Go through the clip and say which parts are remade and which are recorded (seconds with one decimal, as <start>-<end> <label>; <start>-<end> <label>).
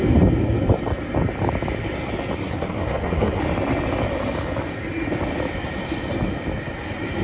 0.0-2.4 recorded; 2.4-3.4 remade; 3.4-7.2 recorded